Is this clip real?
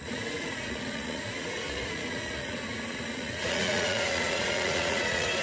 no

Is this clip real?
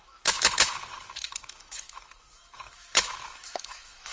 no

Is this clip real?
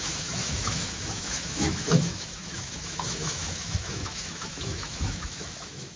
no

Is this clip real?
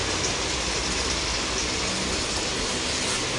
yes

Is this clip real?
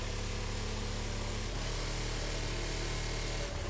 yes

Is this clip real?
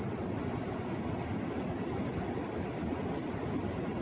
yes